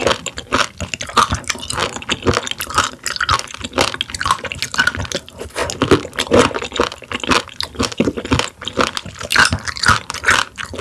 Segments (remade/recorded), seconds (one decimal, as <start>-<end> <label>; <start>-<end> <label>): 0.0-10.8 recorded